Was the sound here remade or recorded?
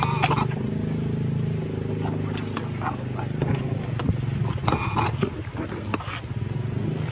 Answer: recorded